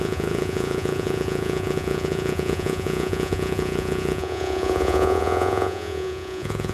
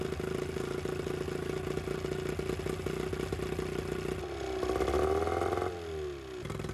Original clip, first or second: second